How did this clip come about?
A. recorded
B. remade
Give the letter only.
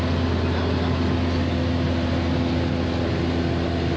A